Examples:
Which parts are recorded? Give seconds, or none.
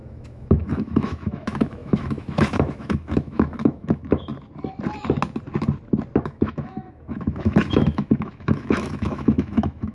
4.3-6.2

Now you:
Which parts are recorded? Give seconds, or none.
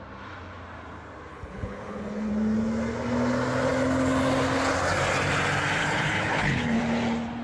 0.0-1.3; 2.3-5.8; 6.8-7.4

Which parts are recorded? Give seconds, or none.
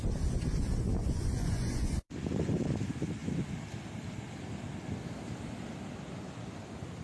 0.0-1.0; 2.5-7.0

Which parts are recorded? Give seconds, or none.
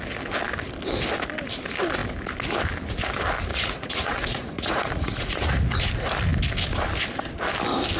0.0-3.5; 5.6-8.0